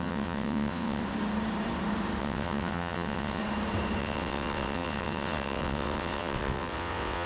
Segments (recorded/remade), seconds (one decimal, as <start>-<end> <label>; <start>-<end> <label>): 0.0-1.0 remade; 1.0-2.2 recorded; 2.2-3.4 remade; 3.4-4.0 recorded; 4.0-7.3 remade